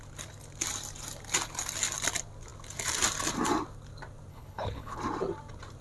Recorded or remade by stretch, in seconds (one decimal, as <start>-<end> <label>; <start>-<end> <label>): 0.0-4.3 recorded; 4.3-5.0 remade; 5.0-5.8 recorded